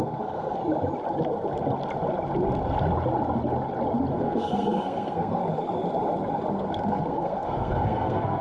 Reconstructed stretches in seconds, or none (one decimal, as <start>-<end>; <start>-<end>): 0.0-0.6; 4.1-5.4; 6.5-8.4